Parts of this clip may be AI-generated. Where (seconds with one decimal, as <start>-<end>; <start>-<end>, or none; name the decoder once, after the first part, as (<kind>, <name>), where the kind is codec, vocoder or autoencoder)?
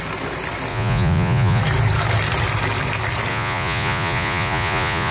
0.7-1.6 (vocoder, Vocos); 3.3-5.1